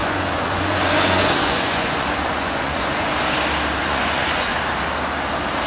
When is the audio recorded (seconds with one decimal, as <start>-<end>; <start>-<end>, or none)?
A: 3.1-3.8; 4.5-5.7